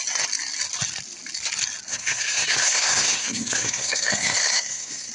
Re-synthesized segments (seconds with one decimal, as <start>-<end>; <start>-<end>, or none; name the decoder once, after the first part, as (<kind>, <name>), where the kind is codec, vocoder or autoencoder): 1.9-5.1 (codec, SNAC)